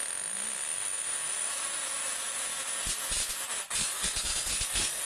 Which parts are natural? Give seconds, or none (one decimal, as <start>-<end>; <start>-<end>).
0.0-3.8